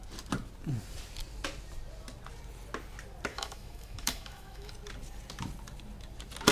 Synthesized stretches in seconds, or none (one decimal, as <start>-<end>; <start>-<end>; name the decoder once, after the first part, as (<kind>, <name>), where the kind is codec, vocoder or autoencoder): 3.3-4.7 (autoencoder, DAC-VAE)